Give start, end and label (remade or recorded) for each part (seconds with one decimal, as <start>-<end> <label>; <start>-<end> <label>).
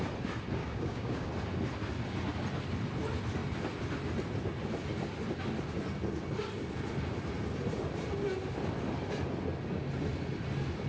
0.0-0.6 recorded; 0.6-1.3 remade; 1.3-10.9 recorded